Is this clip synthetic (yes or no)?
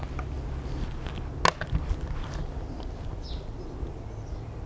no